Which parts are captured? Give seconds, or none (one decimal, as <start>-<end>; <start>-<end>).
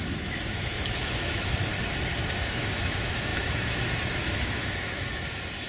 1.7-2.3